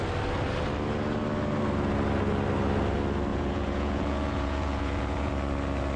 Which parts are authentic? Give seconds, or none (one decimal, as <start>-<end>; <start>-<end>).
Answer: 0.0-3.3; 5.3-6.0